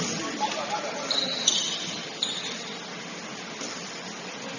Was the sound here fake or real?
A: real